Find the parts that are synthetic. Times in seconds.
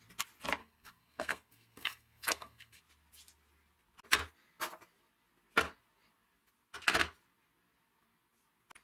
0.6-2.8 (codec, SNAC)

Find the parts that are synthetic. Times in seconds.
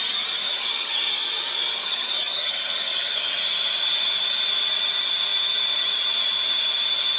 0.4-1.1 (vocoder, HiFi-GAN); 1.8-3.4